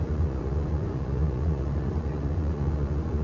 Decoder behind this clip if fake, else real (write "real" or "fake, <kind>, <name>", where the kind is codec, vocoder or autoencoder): fake, vocoder, Vocos